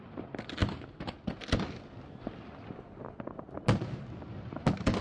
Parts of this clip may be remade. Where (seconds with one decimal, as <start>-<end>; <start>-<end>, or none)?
none